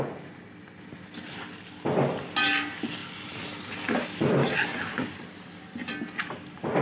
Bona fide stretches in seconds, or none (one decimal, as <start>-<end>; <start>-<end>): 0.0-6.8